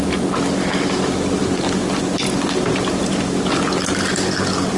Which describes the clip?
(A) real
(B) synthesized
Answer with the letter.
A